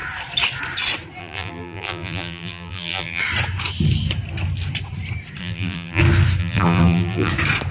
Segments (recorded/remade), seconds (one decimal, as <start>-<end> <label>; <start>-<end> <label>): 0.0-1.2 recorded; 1.2-3.2 remade; 3.2-5.4 recorded; 5.4-6.0 remade; 6.0-6.4 recorded; 6.4-7.3 remade; 7.3-7.7 recorded